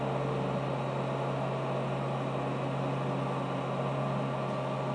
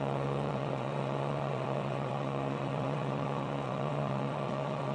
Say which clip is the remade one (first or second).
second